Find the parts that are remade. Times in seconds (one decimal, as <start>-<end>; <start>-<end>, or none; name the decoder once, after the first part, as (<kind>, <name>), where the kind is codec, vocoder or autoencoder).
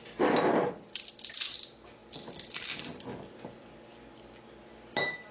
none